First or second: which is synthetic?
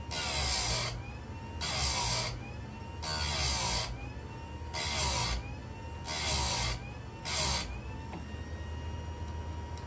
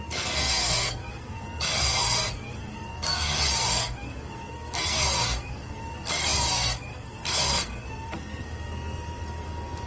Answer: second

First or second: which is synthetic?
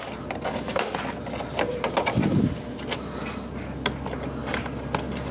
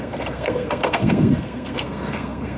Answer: second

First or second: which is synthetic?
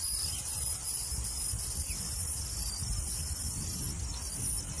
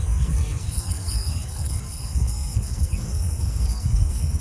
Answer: second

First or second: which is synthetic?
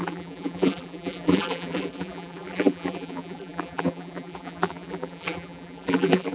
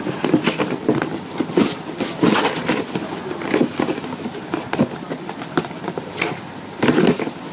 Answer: first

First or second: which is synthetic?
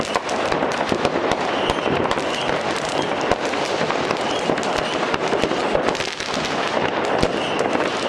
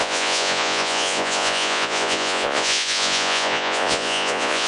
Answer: second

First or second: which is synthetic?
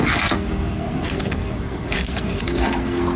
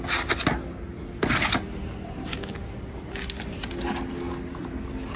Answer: first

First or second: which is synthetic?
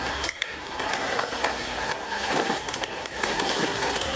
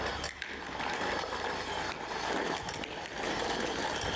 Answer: first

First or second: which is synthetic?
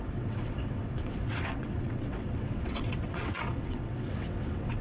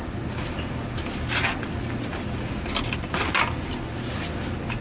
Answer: first